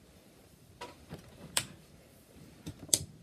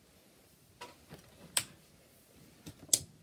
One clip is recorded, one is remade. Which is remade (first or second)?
first